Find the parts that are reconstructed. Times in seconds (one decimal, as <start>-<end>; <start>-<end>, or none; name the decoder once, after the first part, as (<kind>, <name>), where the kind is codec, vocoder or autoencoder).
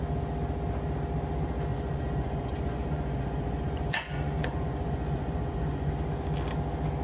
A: 1.7-5.9 (vocoder, Vocos)